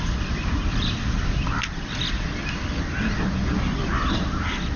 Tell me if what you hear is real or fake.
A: fake